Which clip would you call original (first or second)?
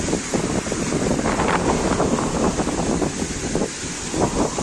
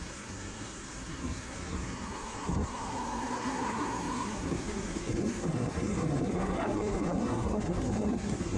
first